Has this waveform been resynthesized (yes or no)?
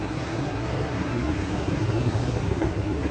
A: yes